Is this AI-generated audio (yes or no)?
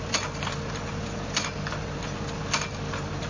no